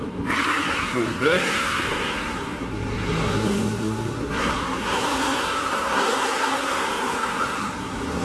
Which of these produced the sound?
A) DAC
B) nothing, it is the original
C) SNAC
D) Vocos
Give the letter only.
C